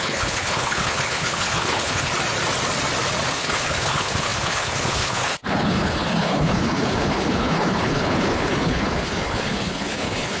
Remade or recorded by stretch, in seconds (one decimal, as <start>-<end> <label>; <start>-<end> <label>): 0.0-2.1 remade; 2.1-3.3 recorded; 3.3-10.4 remade